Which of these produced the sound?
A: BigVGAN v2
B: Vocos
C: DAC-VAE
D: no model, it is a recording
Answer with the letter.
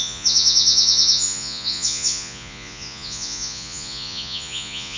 B